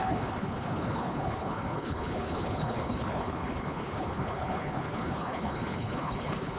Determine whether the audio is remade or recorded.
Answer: remade